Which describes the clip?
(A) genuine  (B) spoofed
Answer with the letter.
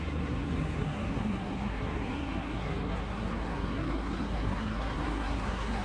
B